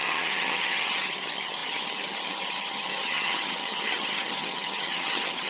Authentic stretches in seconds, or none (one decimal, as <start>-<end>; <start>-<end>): none